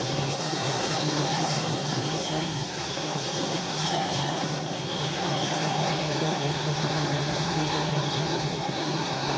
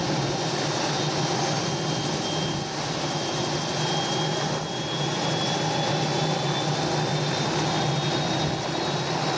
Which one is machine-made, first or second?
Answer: first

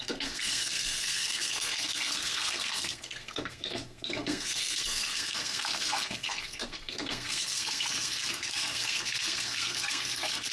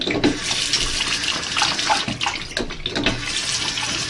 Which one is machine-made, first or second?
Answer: first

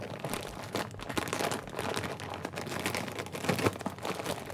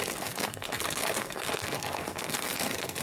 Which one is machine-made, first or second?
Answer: second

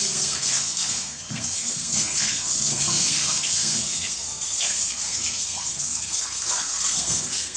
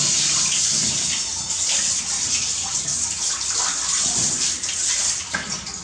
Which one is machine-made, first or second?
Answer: first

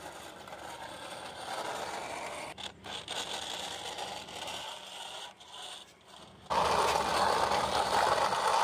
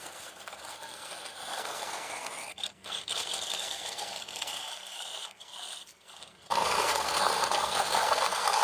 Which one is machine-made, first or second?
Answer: second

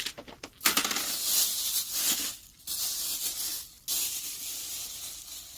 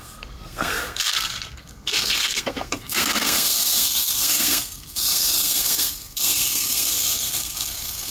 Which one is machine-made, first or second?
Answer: second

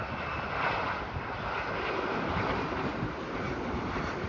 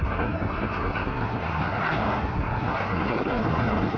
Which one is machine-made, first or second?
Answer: second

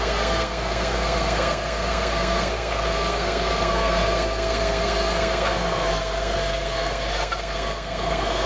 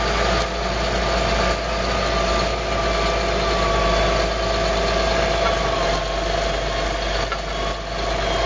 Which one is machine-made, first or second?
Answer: first